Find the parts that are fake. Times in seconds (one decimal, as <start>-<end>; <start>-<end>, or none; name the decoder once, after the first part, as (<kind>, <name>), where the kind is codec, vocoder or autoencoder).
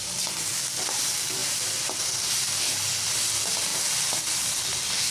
3.7-4.2 (vocoder, BigVGAN v2)